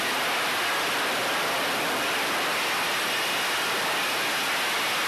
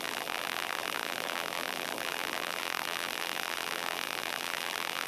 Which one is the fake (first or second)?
second